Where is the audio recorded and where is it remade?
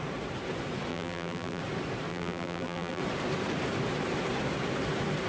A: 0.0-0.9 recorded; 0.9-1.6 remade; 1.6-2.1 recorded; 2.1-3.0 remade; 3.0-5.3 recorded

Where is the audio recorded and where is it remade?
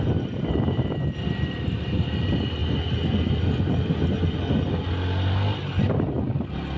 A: 0.0-6.8 recorded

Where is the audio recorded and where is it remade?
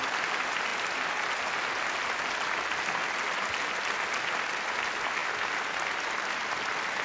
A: 0.0-7.0 recorded